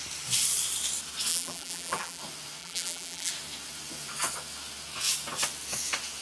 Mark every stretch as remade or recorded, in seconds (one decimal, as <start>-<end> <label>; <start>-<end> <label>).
0.0-1.3 recorded; 1.3-2.2 remade; 2.2-2.6 recorded; 2.6-3.3 remade; 3.3-6.2 recorded